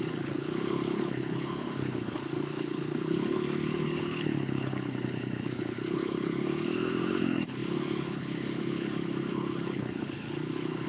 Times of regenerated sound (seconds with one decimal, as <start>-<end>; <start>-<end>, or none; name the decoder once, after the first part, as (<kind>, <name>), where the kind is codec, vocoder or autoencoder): 0.0-10.9 (codec, HILCodec)